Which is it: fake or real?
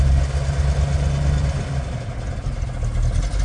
real